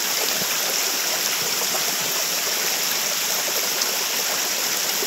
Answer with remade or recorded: recorded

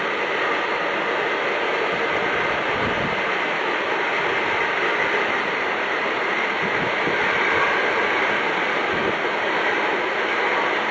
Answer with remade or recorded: recorded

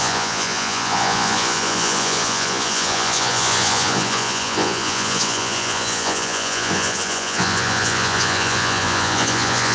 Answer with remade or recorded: remade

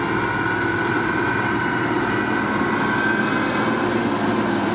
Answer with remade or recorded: recorded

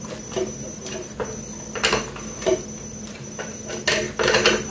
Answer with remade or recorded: recorded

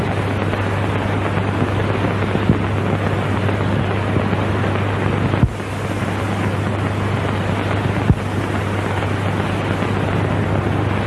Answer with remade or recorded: recorded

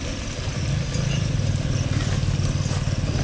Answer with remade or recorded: recorded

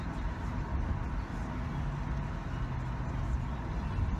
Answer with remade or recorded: recorded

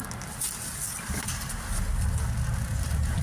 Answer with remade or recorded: recorded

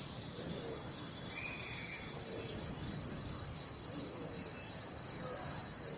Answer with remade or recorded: recorded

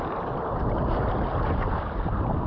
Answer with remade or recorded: recorded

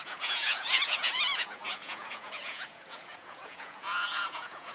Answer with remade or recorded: remade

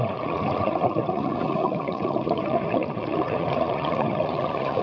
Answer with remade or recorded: remade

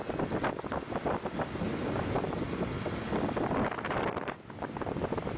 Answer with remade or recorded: recorded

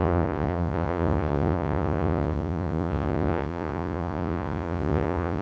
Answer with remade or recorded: remade